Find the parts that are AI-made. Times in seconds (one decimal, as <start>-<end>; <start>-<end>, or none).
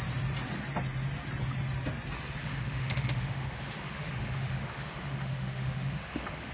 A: 2.4-6.5